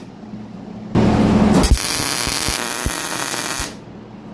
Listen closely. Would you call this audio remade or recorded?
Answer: recorded